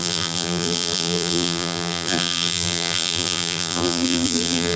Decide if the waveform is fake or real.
fake